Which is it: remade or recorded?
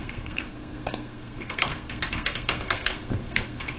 remade